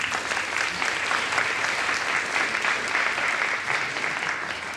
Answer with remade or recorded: recorded